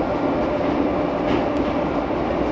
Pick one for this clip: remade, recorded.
recorded